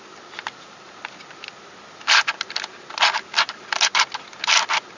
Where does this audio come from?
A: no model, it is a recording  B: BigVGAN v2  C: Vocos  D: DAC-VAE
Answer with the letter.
A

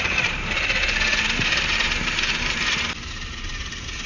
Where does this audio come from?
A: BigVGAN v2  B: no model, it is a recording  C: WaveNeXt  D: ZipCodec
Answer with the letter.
A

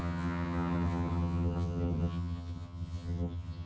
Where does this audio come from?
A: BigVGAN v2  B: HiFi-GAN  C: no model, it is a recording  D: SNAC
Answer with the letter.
B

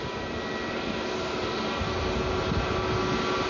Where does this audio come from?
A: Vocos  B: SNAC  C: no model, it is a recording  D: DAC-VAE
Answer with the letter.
C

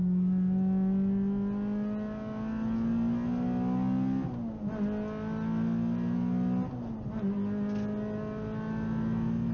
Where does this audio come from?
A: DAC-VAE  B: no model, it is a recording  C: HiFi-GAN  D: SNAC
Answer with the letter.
B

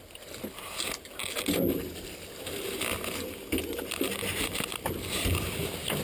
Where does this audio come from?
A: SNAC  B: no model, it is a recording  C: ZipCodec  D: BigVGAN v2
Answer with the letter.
B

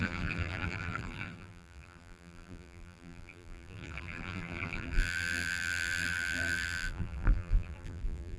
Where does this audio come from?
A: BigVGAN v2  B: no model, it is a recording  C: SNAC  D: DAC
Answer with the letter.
A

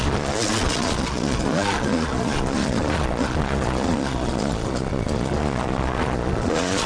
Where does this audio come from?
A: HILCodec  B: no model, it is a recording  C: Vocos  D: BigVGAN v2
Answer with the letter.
C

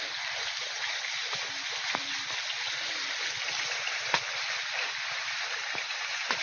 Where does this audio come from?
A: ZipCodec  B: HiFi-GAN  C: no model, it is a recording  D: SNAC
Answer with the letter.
C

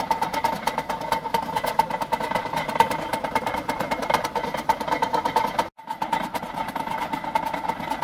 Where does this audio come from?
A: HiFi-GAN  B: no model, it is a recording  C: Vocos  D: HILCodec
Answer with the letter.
B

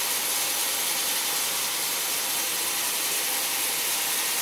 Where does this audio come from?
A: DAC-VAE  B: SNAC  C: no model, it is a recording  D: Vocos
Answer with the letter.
C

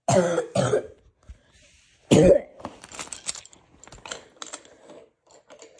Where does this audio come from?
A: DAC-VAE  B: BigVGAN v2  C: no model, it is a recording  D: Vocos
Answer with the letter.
C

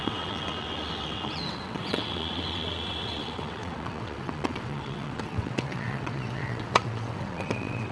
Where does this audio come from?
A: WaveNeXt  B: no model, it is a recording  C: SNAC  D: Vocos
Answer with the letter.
A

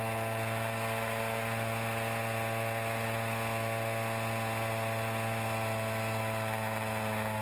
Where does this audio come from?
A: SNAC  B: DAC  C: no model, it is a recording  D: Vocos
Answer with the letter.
C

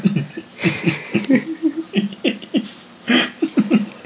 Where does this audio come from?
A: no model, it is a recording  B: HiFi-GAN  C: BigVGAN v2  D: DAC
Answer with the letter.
A